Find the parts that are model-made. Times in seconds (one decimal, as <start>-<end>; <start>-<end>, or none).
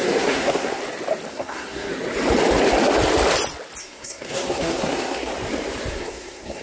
0.0-0.8; 1.3-1.9; 3.8-5.3; 5.9-6.6